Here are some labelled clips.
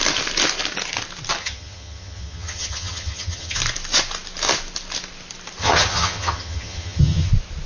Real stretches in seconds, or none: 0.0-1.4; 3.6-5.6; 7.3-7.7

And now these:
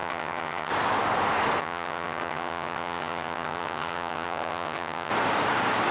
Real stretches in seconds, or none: 0.7-1.6; 5.1-5.9

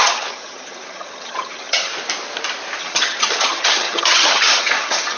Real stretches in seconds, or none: 1.9-2.8

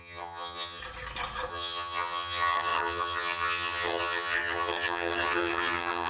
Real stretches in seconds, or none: 0.8-1.5